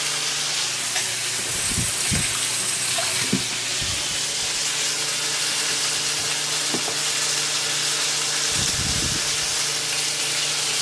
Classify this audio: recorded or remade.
recorded